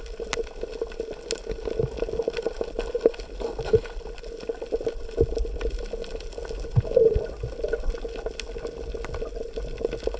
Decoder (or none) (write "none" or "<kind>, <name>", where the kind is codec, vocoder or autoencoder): none